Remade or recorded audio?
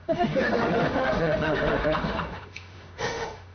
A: remade